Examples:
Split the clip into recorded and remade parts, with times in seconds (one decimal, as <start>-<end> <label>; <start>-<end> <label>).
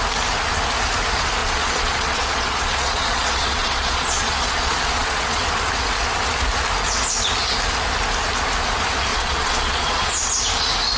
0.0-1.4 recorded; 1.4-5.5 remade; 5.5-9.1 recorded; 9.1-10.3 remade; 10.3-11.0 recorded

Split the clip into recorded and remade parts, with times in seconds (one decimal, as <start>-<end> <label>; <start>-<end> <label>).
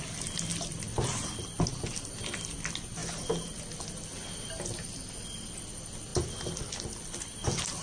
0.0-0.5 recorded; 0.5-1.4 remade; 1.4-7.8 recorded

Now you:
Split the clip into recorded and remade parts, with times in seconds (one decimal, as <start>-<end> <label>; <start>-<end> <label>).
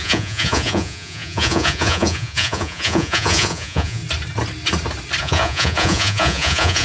0.0-4.0 remade; 4.0-5.2 recorded; 5.2-6.8 remade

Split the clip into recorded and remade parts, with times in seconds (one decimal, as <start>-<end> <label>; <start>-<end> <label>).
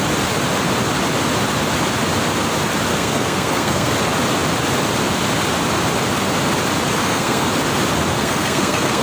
0.0-2.9 recorded; 2.9-3.9 remade; 3.9-7.0 recorded; 7.0-7.5 remade; 7.5-8.1 recorded; 8.1-9.0 remade